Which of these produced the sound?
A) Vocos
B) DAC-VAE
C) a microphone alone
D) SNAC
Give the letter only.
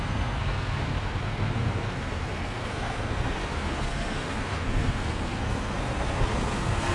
D